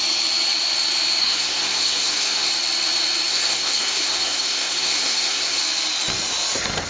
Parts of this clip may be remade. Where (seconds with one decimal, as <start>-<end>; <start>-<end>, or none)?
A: 1.2-2.5; 3.3-5.6